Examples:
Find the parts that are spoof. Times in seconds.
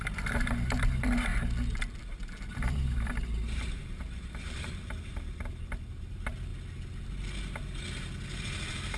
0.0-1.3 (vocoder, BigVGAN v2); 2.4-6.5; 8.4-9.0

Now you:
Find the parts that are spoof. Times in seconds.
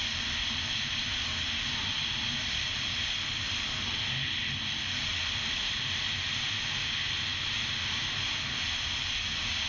7.3-8.1 (vocoder, BigVGAN v2)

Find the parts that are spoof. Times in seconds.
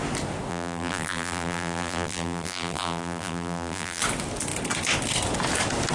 0.5-4.0 (vocoder, BigVGAN v2)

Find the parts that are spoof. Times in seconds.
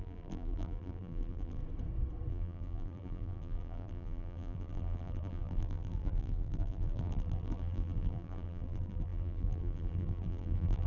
0.0-1.6 (vocoder, BigVGAN v2); 2.3-10.9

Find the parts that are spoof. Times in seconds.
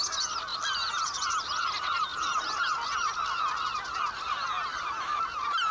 0.5-1.7 (vocoder, BigVGAN v2); 4.7-5.2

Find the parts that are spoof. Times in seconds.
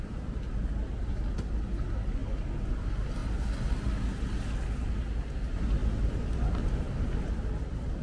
5.8-6.8 (vocoder, BigVGAN v2)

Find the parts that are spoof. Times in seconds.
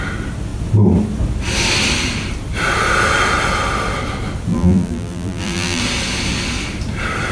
4.5-5.8 (vocoder, BigVGAN v2)